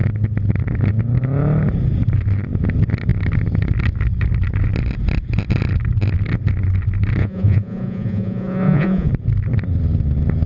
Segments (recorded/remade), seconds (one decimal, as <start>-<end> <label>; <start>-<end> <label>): 0.0-7.2 recorded; 7.2-9.1 remade; 9.1-10.5 recorded